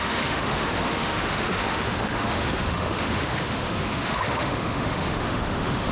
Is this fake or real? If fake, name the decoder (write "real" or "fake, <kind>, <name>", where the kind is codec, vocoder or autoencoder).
fake, autoencoder, DAC-VAE